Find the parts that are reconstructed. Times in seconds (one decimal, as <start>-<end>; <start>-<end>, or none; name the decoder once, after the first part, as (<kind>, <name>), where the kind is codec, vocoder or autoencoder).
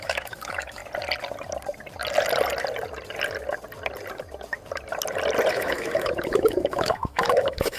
0.0-0.8 (autoencoder, DAC-VAE); 5.5-7.8